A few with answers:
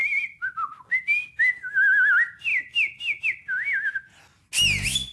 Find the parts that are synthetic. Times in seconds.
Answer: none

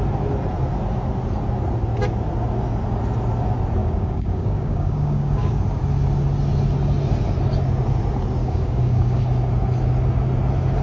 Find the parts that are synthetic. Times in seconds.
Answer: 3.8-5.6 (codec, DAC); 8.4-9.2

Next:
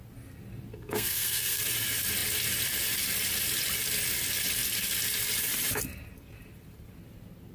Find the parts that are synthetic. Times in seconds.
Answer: 0.7-1.6 (codec, SNAC)

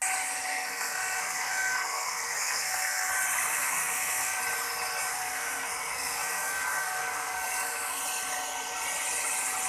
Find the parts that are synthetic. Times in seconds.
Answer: 0.5-3.1 (codec, SNAC); 3.5-4.4; 5.1-8.0

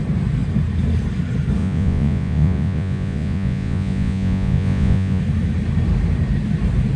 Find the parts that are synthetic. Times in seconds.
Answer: 1.6-5.2 (vocoder, Vocos)

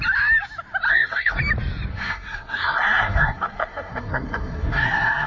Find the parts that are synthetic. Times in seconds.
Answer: 0.9-1.4 (codec, SNAC); 1.9-5.3

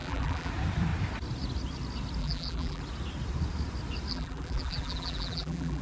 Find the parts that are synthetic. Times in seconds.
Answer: 0.0-0.5 (vocoder, BigVGAN v2); 2.2-2.8; 4.1-5.8